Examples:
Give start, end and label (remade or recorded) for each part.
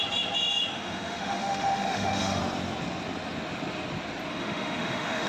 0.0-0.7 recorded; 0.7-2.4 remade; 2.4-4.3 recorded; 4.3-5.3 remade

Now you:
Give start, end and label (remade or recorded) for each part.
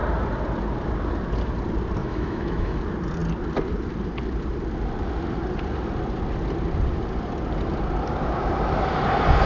0.0-2.0 recorded; 2.0-2.8 remade; 2.8-9.5 recorded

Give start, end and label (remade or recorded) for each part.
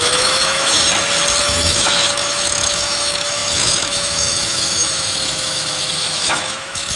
0.0-0.8 remade; 0.8-1.4 recorded; 1.4-7.0 remade